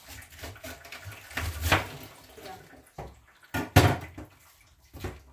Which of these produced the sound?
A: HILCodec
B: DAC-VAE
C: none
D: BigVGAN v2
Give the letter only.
C